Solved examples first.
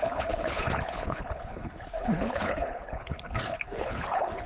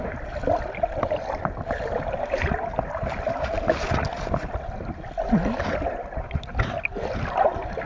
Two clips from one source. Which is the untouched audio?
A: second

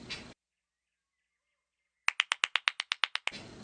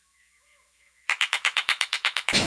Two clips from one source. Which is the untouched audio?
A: first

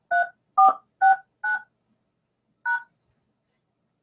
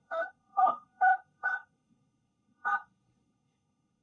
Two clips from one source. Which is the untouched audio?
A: first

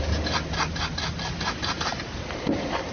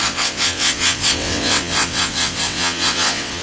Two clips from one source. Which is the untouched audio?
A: first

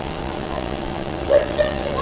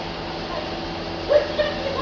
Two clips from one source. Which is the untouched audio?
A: second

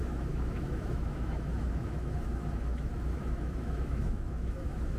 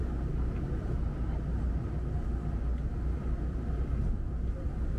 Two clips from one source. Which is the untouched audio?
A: second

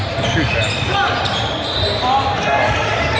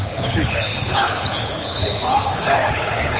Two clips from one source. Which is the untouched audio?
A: first